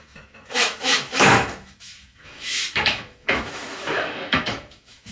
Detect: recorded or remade remade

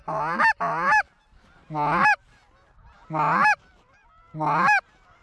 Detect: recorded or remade recorded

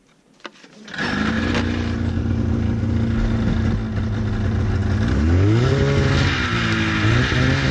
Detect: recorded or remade recorded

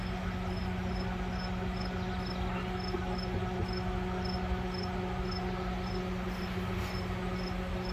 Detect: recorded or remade recorded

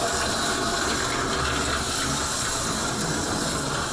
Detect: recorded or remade recorded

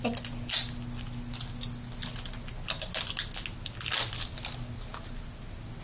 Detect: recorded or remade recorded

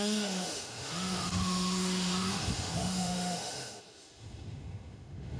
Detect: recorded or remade remade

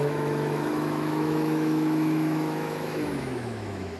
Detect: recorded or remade remade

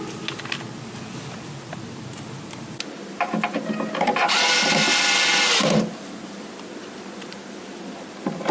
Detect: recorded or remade recorded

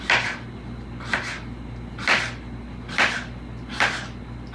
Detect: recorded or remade recorded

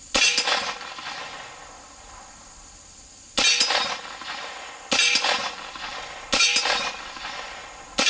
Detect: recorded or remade recorded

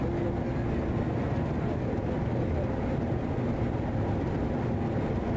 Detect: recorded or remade recorded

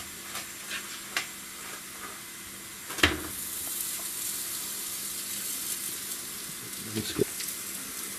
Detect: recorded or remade recorded